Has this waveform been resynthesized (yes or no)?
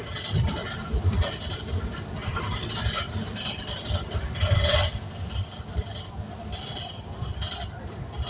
yes